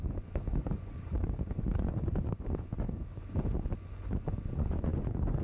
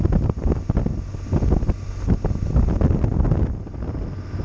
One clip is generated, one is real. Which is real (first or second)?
second